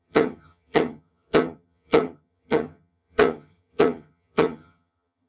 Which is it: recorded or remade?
remade